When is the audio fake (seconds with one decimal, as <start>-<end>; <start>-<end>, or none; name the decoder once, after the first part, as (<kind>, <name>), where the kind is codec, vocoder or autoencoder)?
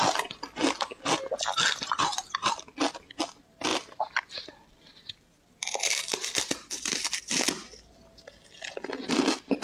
none